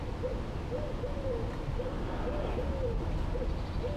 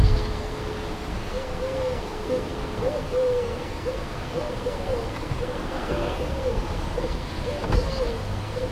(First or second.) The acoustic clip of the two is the first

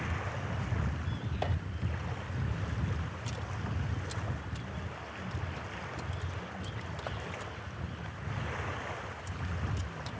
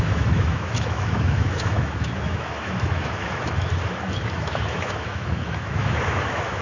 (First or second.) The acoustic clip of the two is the first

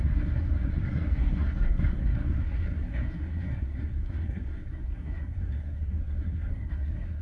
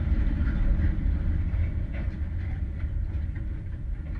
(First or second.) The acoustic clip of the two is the second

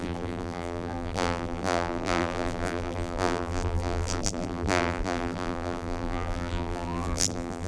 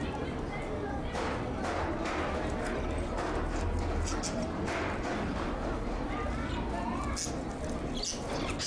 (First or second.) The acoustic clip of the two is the second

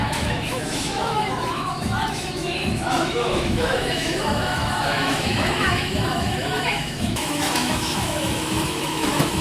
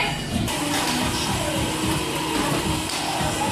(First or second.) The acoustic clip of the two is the second